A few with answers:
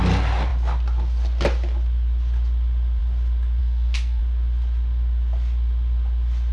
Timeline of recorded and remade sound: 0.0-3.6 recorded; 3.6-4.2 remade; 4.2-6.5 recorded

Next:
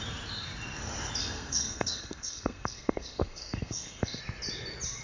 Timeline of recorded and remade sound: 0.0-1.2 recorded; 1.2-4.2 remade; 4.2-5.0 recorded

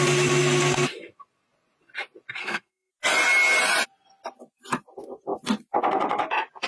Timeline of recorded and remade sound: 0.0-2.4 recorded; 2.4-2.9 remade; 2.9-6.7 recorded

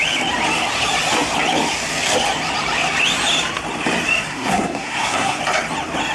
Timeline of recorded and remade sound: 0.0-4.3 recorded; 4.3-5.4 remade; 5.4-6.1 recorded